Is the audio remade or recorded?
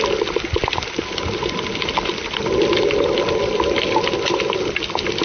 recorded